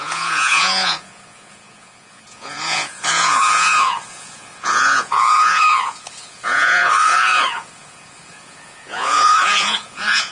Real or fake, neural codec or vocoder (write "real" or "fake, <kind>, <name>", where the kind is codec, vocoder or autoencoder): fake, vocoder, Vocos